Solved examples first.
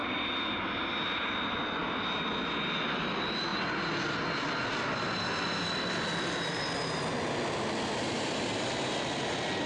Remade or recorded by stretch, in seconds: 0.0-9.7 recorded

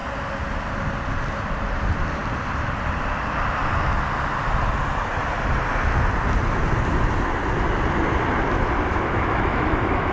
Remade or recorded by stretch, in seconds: 0.0-8.9 recorded; 8.9-10.1 remade

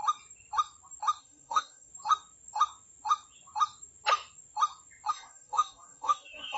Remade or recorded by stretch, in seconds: 0.0-1.2 recorded; 1.2-1.9 remade; 1.9-5.1 recorded; 5.1-6.6 remade